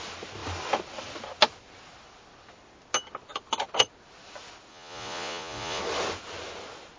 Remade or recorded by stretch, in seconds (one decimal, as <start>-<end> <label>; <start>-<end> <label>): 0.0-4.7 recorded; 4.7-5.8 remade; 5.8-7.0 recorded